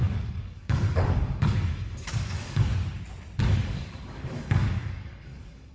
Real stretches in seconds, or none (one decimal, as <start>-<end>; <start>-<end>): 2.7-3.4